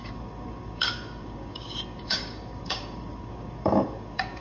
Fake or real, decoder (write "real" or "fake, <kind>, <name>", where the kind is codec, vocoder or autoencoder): fake, codec, DAC